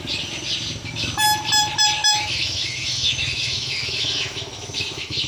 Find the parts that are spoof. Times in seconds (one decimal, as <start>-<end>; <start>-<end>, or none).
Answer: 2.0-5.3